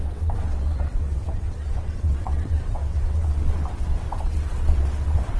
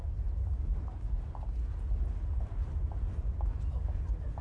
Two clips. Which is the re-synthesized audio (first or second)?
first